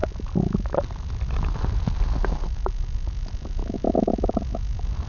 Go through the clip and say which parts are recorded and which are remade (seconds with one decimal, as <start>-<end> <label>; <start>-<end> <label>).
0.0-5.1 recorded